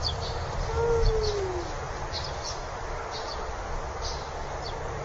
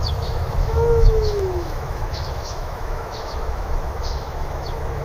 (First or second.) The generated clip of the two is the second